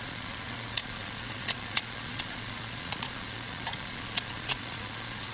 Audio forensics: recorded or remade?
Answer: remade